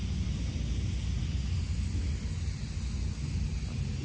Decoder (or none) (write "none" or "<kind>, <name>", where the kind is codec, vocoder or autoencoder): none